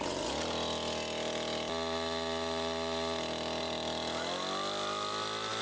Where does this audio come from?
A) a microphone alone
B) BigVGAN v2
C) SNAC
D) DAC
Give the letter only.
A